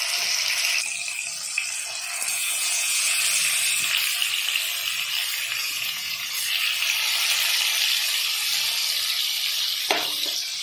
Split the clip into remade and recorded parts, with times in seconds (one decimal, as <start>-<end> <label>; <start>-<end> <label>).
0.0-2.3 recorded; 2.3-3.2 remade; 3.2-5.6 recorded; 5.6-6.3 remade; 6.3-10.6 recorded